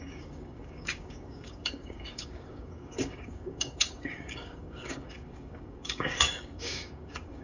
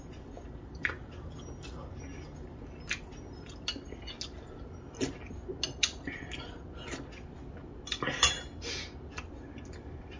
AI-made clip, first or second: first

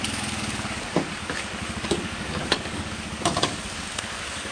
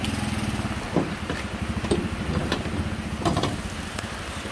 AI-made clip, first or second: first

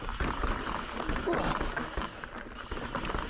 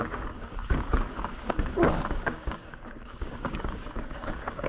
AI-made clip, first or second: second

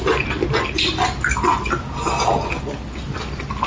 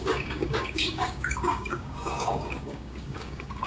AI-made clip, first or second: second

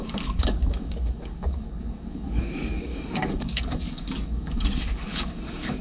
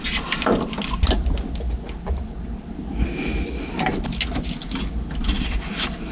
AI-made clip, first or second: first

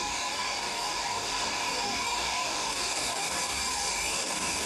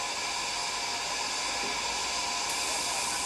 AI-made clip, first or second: first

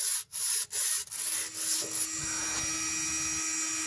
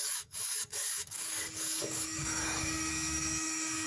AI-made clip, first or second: second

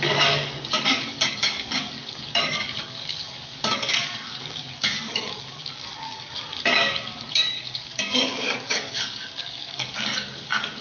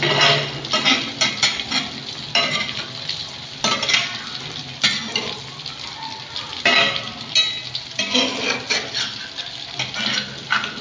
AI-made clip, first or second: first